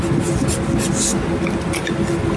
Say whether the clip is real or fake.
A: real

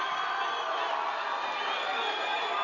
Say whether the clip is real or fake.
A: real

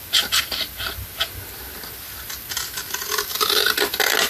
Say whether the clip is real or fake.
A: real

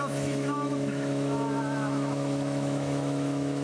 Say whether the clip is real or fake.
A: fake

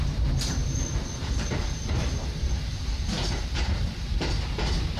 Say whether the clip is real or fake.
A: fake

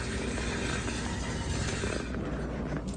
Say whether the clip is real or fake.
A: real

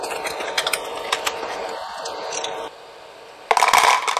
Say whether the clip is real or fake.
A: real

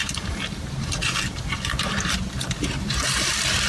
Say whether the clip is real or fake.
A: fake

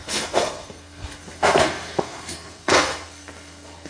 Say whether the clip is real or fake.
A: fake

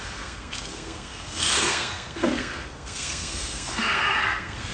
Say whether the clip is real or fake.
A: fake